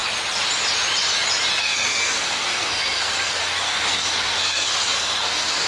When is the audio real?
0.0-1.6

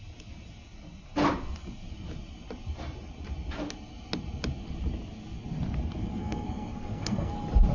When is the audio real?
0.0-6.2; 7.3-7.7

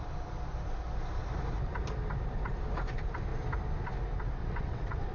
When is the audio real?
0.0-4.4

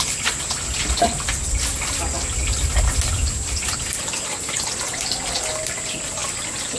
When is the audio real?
0.0-6.8

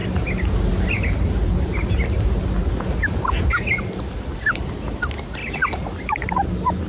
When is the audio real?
0.0-4.0; 5.4-6.3

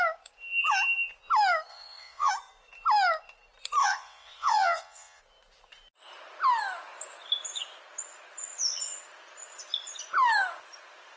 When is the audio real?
0.0-1.7; 2.3-3.8; 5.2-11.2